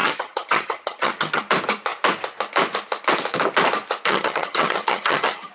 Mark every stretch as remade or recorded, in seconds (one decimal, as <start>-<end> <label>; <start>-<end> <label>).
0.0-1.4 remade; 1.4-4.1 recorded; 4.1-5.5 remade